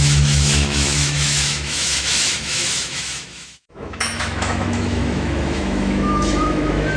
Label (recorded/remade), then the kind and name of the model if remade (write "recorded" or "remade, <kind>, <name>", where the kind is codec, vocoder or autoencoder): remade, autoencoder, DAC-VAE